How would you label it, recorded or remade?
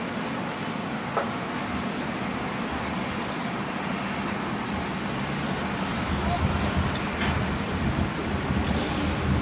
recorded